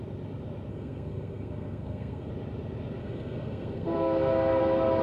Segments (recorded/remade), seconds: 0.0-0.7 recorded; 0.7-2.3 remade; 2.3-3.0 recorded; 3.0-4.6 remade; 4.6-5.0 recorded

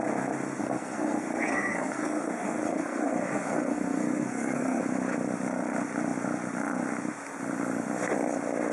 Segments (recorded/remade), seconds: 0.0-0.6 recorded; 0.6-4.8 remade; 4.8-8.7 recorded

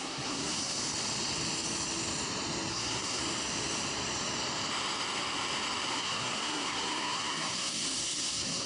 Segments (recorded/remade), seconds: 0.0-0.8 remade; 0.8-2.7 recorded; 2.7-3.2 remade; 3.2-5.9 recorded; 5.9-8.7 remade